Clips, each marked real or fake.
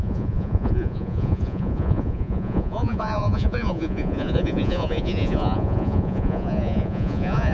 fake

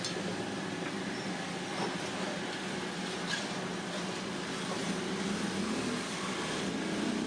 real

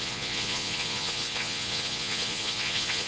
fake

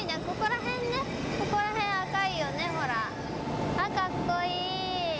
real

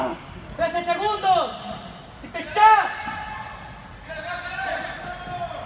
real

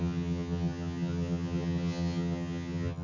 fake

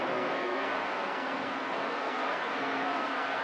fake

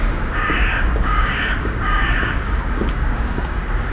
fake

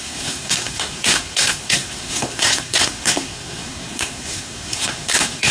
fake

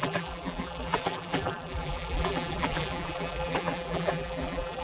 fake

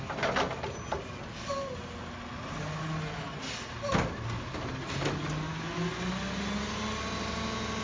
real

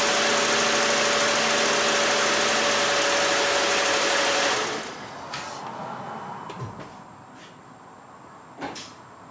real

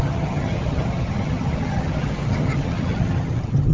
fake